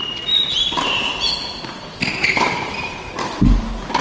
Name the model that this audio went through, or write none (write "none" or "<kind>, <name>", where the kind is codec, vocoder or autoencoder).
none